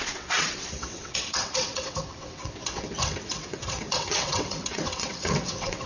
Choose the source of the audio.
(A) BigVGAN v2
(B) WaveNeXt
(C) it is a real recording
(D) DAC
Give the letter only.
B